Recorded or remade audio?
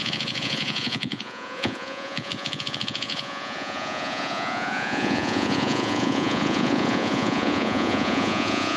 remade